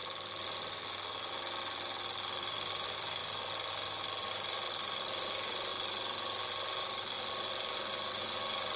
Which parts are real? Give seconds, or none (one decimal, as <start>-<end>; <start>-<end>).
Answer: 0.0-2.4; 3.2-4.2; 5.7-8.2

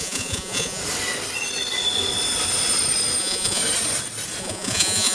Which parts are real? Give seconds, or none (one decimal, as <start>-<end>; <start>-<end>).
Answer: 0.8-3.2; 3.6-4.4

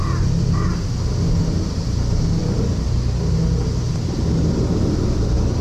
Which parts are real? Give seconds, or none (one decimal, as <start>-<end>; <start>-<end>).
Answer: 0.0-5.6

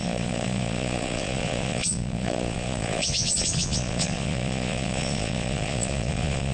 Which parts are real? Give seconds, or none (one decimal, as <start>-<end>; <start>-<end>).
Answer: none

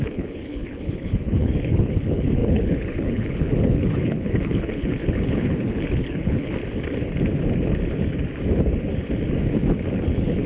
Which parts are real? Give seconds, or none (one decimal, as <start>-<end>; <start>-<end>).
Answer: 6.6-9.9

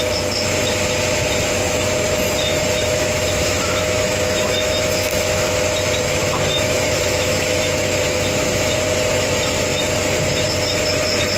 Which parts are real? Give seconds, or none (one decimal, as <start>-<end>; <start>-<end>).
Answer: 0.0-2.5; 5.6-6.2; 8.7-11.4

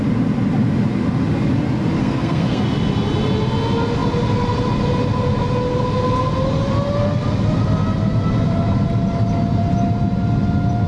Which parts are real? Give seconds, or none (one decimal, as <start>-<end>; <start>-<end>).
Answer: 0.0-2.0; 2.6-10.9